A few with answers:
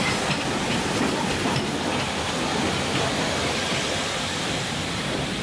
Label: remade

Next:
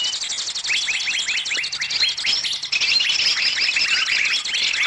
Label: recorded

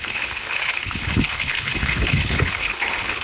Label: remade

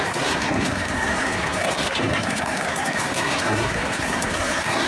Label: remade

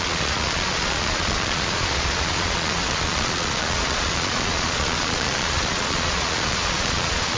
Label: remade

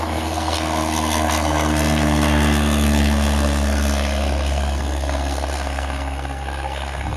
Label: remade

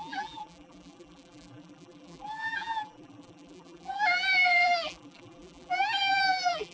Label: remade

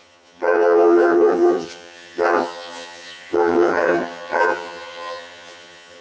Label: remade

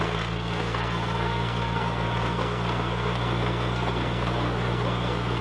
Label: remade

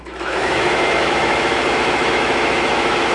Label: remade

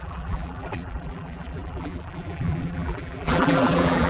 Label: remade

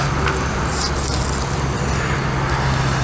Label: recorded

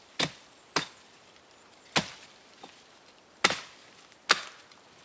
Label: recorded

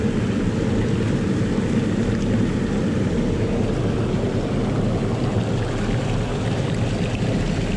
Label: recorded